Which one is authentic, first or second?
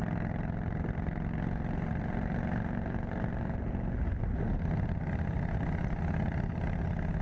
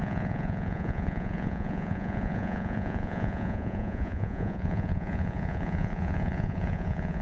first